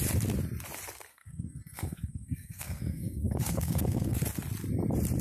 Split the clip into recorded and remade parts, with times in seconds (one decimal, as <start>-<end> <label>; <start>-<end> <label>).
0.0-1.1 recorded; 1.1-4.2 remade; 4.2-5.2 recorded